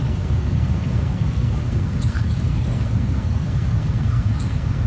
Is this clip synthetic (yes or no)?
yes